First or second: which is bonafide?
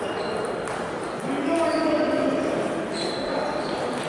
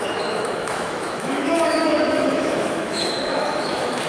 first